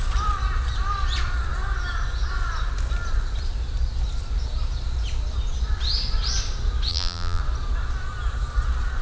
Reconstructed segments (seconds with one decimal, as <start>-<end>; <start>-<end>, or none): 6.9-7.4